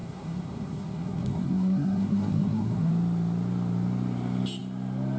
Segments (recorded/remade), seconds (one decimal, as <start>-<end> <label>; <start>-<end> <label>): 0.0-2.9 remade; 2.9-5.2 recorded